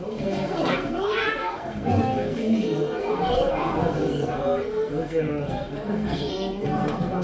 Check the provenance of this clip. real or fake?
fake